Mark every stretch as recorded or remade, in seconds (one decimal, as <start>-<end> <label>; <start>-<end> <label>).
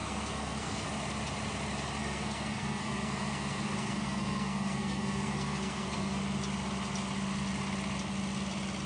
0.0-0.9 remade; 0.9-2.0 recorded; 2.0-6.2 remade; 6.2-8.9 recorded